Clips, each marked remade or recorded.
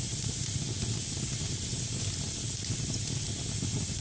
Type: recorded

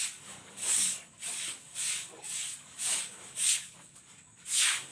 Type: remade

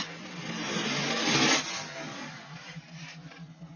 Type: recorded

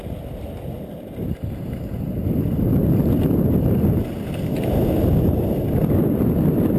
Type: recorded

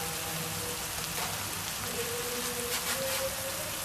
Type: recorded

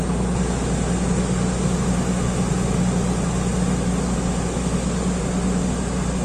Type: recorded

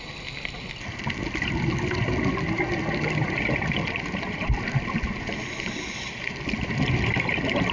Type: recorded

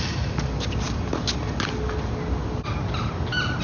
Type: recorded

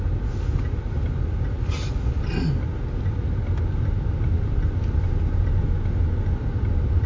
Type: recorded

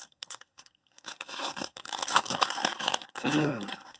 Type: remade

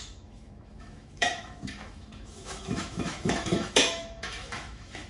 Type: remade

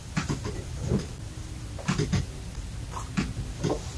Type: recorded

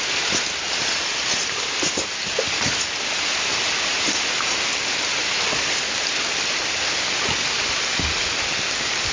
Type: recorded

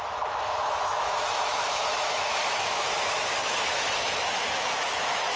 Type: remade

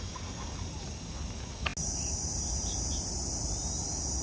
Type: recorded